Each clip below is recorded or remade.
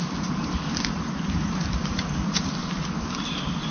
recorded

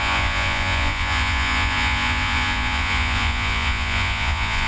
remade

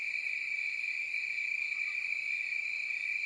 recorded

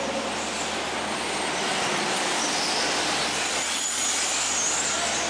recorded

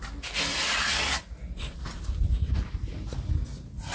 recorded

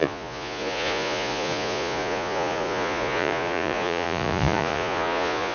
remade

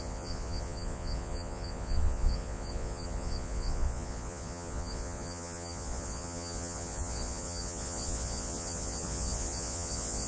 remade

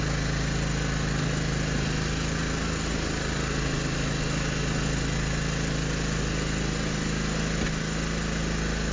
recorded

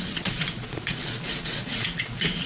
remade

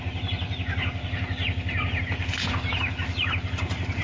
recorded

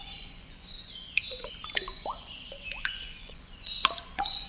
remade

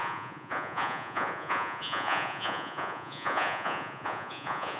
remade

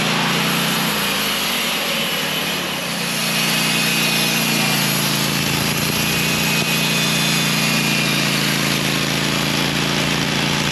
recorded